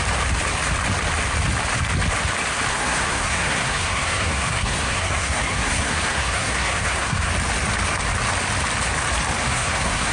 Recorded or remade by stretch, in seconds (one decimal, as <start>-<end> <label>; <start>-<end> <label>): 0.0-2.7 recorded; 2.7-7.3 remade; 7.3-9.4 recorded; 9.4-10.1 remade